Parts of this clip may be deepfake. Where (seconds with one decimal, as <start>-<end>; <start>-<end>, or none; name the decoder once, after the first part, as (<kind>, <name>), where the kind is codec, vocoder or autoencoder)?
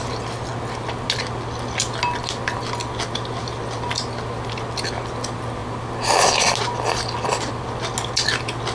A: none